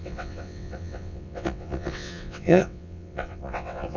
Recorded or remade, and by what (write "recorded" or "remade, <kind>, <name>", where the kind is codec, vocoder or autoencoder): remade, vocoder, WaveNeXt